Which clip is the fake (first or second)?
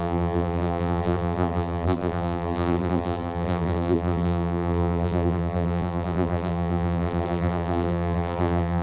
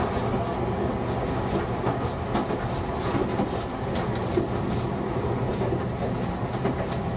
first